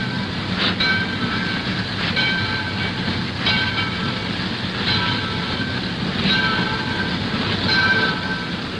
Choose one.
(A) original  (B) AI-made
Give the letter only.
A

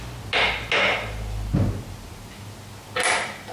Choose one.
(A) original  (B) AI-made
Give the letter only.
A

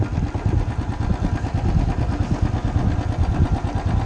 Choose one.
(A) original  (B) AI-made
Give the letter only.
A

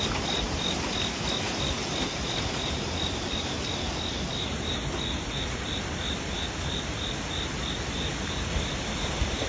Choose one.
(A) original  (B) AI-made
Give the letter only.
A